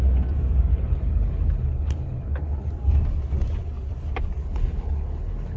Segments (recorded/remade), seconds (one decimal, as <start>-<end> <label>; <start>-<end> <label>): 0.0-0.7 recorded; 0.7-2.7 remade; 2.7-4.4 recorded; 4.4-5.6 remade